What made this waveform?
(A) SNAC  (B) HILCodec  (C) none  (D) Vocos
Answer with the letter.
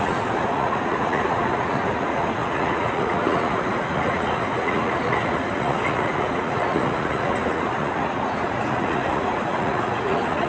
D